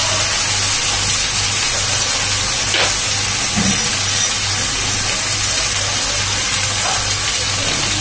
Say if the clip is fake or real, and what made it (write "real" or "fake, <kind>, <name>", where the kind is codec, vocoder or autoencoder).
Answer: real